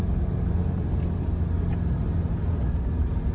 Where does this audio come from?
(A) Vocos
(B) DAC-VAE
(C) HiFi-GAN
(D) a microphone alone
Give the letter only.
D